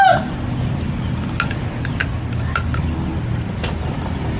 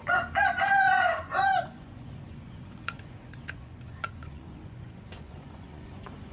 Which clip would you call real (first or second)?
first